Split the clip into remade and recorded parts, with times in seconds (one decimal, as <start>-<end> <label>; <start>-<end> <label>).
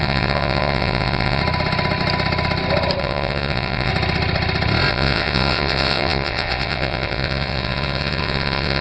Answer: 0.0-1.4 remade; 1.4-3.0 recorded; 3.0-3.9 remade; 3.9-4.9 recorded; 4.9-8.8 remade